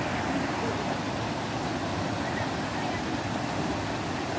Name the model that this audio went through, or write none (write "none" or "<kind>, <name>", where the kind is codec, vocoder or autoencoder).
none